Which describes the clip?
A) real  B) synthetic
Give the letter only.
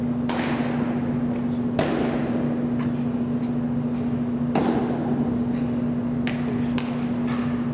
A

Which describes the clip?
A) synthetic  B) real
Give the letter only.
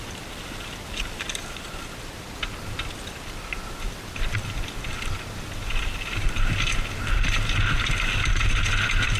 B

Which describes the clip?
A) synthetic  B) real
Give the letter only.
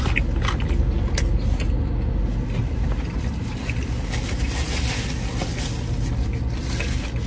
B